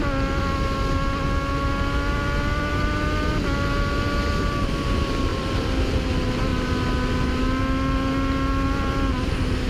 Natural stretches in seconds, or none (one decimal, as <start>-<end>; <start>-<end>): 0.0-5.3; 6.1-9.7